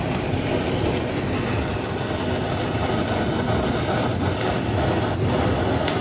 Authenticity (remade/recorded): recorded